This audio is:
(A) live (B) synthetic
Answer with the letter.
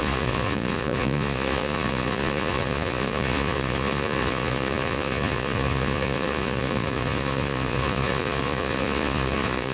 B